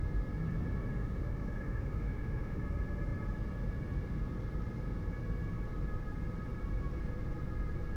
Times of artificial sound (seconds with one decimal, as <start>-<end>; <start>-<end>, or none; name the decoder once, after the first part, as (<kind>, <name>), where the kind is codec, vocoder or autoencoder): 0.9-2.6 (autoencoder, DAC-VAE)